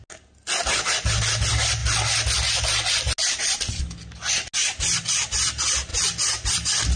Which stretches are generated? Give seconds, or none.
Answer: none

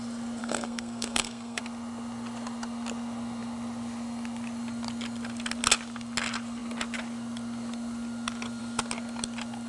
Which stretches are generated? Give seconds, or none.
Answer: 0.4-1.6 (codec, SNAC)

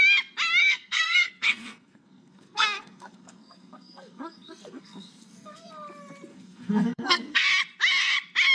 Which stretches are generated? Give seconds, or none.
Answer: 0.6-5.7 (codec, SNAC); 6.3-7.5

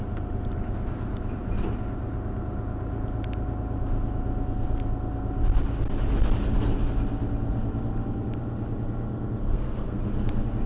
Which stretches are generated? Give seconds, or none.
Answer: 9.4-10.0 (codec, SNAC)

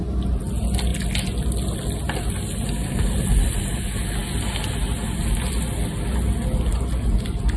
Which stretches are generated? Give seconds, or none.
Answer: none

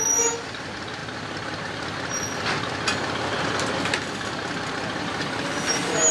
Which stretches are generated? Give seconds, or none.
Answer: none